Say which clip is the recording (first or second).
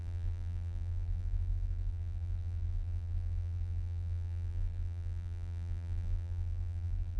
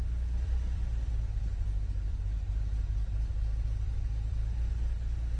second